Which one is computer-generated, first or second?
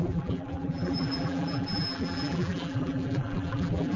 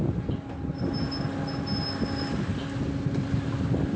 first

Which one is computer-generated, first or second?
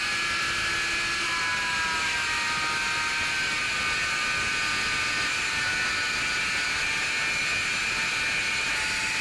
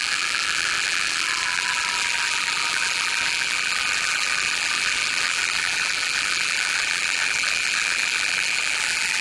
second